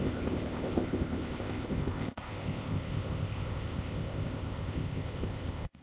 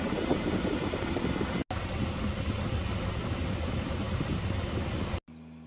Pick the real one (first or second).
second